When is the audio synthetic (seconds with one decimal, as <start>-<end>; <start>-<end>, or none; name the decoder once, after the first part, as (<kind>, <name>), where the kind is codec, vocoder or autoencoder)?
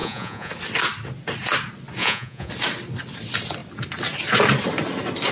0.0-0.5 (vocoder, Vocos); 2.0-2.5